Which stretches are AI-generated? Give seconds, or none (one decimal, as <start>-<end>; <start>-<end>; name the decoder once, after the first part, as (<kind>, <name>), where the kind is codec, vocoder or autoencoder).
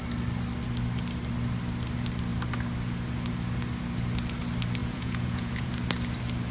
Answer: 4.8-5.7 (vocoder, Vocos)